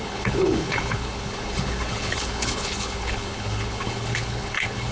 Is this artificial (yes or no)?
yes